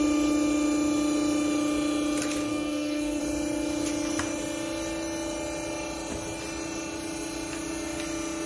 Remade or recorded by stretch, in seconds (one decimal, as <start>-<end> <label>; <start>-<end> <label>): 0.0-2.5 recorded; 2.5-3.2 remade; 3.2-8.5 recorded